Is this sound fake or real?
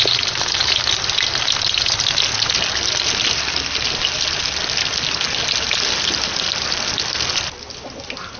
real